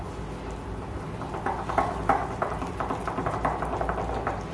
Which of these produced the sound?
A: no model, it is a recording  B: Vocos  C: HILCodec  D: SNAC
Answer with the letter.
A